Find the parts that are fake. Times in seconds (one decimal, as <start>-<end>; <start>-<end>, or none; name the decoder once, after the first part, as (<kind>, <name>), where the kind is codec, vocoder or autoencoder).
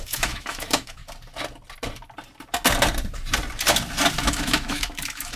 0.0-1.0 (autoencoder, DAC-VAE); 4.2-5.4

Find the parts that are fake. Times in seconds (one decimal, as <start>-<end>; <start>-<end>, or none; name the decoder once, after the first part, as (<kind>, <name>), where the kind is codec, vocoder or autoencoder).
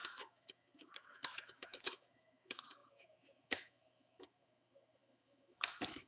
0.0-6.1 (autoencoder, DAC-VAE)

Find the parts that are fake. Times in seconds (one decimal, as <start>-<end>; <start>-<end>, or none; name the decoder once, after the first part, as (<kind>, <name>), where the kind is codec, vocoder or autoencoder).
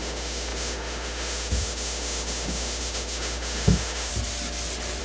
0.0-4.1 (autoencoder, DAC-VAE)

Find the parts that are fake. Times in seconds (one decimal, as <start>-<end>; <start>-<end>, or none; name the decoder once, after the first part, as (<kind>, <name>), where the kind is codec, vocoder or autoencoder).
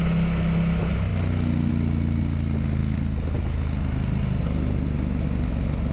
none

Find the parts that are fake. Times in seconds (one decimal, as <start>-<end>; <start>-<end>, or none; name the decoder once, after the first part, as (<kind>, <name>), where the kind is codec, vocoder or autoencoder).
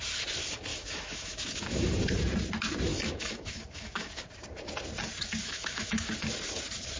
0.7-1.9 (autoencoder, DAC-VAE); 2.9-4.2; 5.4-6.1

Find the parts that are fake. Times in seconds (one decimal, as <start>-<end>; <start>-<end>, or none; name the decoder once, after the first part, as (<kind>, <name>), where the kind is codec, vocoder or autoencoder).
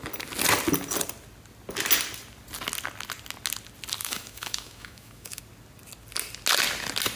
4.0-5.4 (autoencoder, DAC-VAE)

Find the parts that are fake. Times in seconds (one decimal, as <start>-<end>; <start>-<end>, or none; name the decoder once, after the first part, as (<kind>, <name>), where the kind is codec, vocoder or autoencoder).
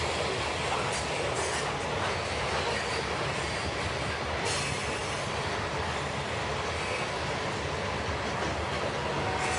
none